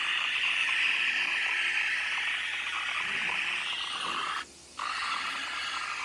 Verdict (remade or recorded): recorded